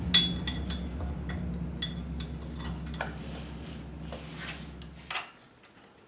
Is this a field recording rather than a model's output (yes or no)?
yes